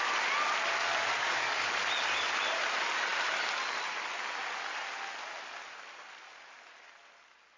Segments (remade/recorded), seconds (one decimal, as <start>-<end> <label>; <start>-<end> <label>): 0.0-1.2 recorded; 1.2-1.7 remade; 1.7-7.6 recorded